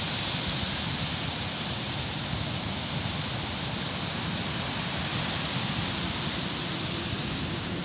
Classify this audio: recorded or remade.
recorded